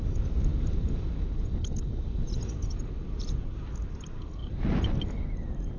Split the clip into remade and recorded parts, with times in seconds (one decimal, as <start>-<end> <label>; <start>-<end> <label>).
0.0-5.8 recorded